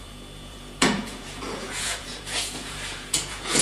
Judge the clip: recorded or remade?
remade